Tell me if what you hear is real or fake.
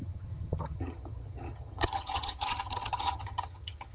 fake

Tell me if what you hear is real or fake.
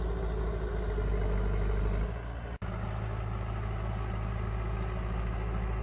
real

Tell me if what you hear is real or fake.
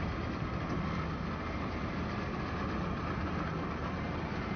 real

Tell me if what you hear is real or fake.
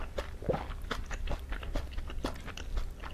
real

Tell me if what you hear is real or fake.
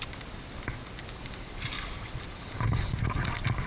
real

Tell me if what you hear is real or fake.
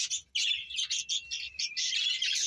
real